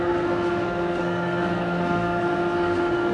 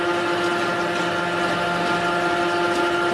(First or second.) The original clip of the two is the second